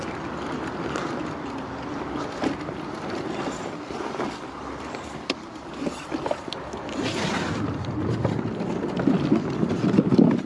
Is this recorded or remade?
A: recorded